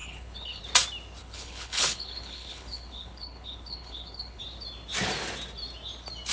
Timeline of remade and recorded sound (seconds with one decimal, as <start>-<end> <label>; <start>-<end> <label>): 0.0-0.6 remade; 0.6-1.2 recorded; 1.2-4.4 remade; 4.4-6.3 recorded